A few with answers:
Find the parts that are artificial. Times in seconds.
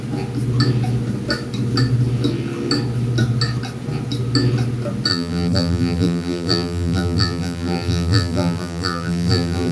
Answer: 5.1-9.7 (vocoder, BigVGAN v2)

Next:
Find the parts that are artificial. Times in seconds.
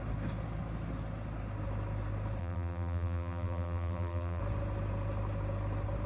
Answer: 2.4-4.4 (vocoder, BigVGAN v2)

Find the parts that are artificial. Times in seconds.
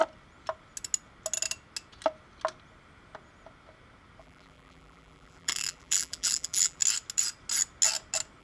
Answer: 4.2-6.8 (vocoder, BigVGAN v2)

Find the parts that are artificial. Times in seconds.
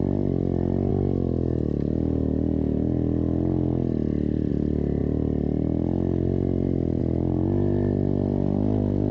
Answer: 0.0-0.9 (vocoder, BigVGAN v2); 4.5-5.0; 7.0-9.1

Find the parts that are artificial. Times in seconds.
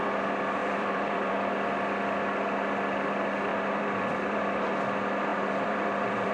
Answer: 0.6-1.3 (vocoder, BigVGAN v2); 3.5-4.4; 5.3-6.3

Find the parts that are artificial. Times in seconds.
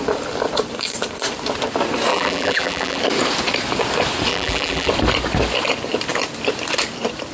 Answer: 2.1-3.0 (vocoder, BigVGAN v2); 4.3-4.9